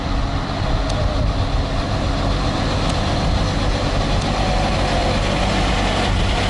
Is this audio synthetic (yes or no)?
no